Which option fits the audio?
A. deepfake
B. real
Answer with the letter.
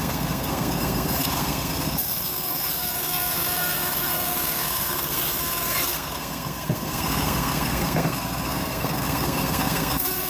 A